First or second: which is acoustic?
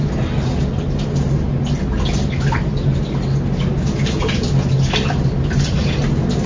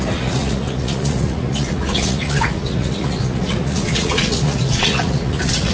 first